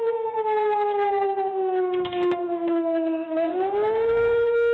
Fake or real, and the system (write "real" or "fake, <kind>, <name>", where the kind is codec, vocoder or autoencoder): fake, autoencoder, DAC-VAE